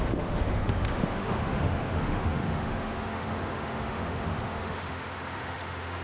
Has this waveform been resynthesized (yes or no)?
yes